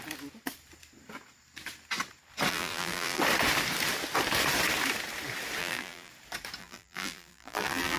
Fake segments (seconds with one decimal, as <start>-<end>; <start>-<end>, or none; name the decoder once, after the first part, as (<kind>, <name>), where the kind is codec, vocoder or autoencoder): 2.5-3.2 (vocoder, BigVGAN v2); 5.6-6.1; 6.6-8.0